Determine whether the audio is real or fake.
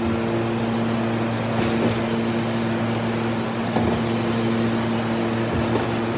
real